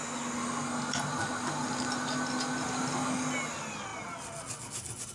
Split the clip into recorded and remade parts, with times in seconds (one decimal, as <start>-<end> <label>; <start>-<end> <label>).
0.0-5.1 recorded